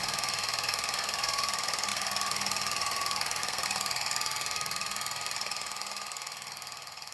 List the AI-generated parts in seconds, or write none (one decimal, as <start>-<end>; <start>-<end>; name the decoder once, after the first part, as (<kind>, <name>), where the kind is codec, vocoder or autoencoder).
0.0-7.1 (codec, SNAC)